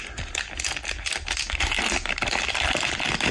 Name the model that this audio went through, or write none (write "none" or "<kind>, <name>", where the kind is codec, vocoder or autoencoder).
none